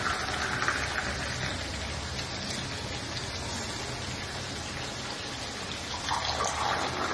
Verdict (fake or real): real